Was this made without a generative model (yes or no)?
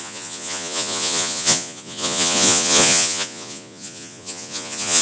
no